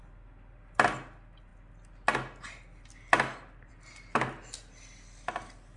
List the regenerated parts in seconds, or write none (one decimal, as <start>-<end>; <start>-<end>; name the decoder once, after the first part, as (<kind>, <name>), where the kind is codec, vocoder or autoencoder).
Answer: none